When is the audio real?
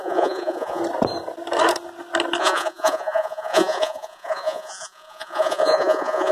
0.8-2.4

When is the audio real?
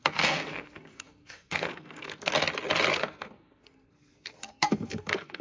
2.3-2.9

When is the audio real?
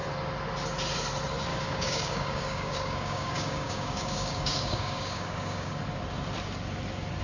0.0-1.5; 5.8-7.2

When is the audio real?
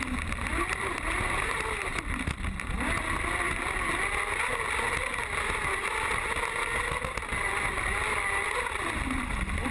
0.0-9.7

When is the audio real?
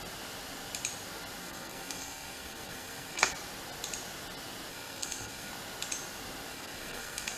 0.0-1.4; 3.3-4.7; 5.5-6.5